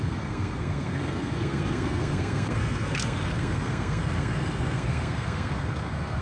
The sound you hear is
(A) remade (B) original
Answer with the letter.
A